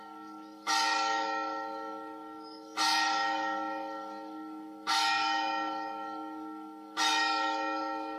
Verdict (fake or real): fake